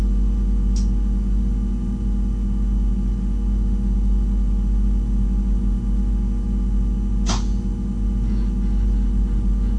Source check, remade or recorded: recorded